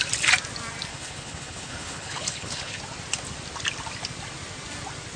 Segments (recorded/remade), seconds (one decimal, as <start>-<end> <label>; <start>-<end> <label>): 0.0-0.9 recorded; 0.9-2.8 remade; 2.8-5.2 recorded